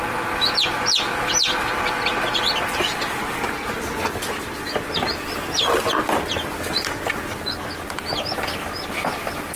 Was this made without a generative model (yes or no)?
yes